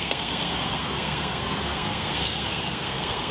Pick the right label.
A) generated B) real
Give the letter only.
A